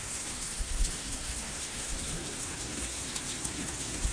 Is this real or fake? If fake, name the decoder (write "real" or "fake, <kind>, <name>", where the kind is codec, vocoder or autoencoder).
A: fake, codec, SNAC